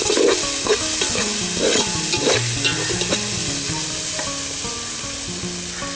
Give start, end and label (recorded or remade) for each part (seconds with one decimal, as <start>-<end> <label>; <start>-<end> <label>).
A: 0.0-6.0 recorded